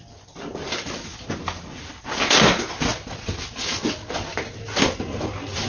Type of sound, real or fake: real